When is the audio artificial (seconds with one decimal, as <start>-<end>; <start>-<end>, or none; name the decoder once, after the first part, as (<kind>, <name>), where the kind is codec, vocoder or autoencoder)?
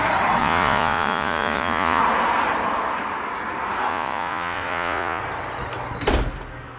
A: 0.4-2.0 (vocoder, Vocos); 3.9-5.2